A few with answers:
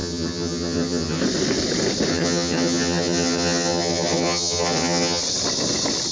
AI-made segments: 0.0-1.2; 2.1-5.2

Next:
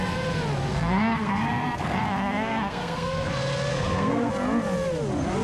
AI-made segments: 0.7-3.3; 3.7-4.3

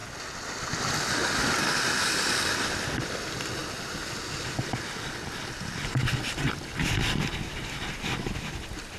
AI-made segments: none

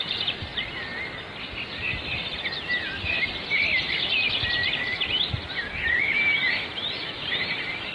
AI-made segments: 4.6-7.9

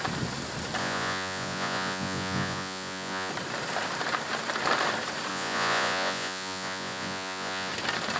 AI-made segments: 0.8-3.3; 5.3-7.7

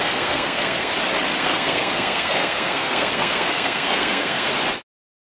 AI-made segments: 0.0-0.9; 1.4-4.5